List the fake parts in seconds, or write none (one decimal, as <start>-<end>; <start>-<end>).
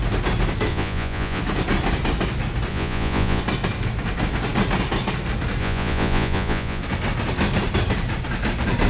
0.7-1.4; 2.7-3.4; 5.6-6.8